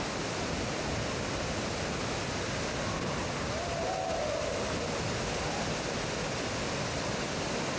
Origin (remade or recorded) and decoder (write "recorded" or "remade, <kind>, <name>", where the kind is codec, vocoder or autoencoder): recorded